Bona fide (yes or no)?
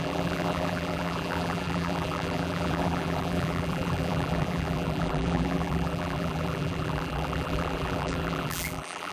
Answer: no